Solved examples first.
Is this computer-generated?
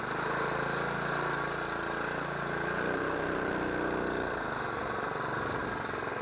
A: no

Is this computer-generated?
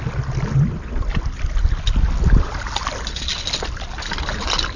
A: no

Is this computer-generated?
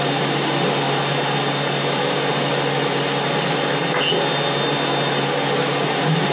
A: no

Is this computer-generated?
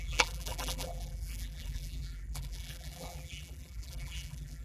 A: yes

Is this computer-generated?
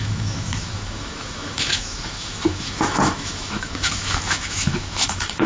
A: yes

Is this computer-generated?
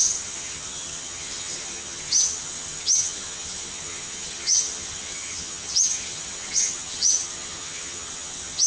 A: yes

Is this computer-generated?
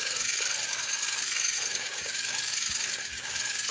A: yes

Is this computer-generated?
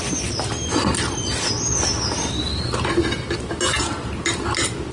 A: no